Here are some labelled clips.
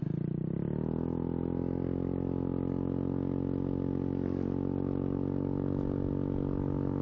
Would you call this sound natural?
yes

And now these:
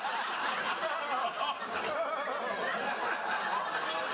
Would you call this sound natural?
yes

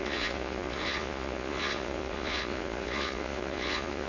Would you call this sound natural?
no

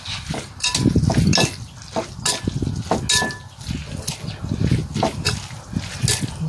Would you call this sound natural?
yes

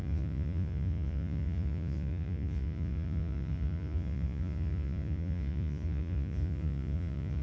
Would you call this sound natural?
no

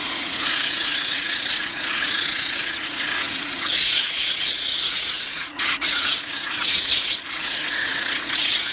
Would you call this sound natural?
no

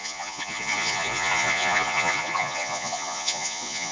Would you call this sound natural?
no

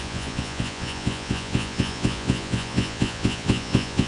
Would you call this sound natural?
no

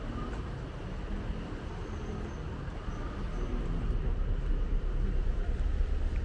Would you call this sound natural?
yes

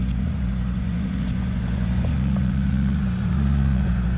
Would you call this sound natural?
no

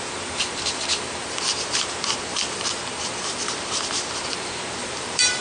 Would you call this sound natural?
no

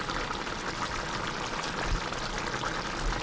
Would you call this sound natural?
yes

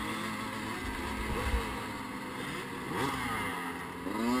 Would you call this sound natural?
yes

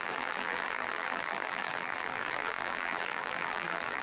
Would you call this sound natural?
no